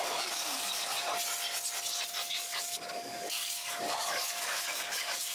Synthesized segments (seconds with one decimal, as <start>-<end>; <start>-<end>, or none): 0.0-0.9; 2.3-5.3